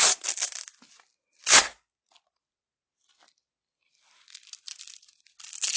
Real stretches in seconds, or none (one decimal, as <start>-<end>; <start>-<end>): 0.0-5.8